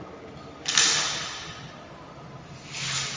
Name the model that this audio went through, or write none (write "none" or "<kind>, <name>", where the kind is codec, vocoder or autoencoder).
none